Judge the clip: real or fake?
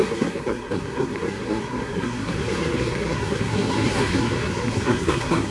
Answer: fake